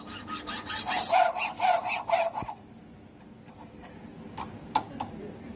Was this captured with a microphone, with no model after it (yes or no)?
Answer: yes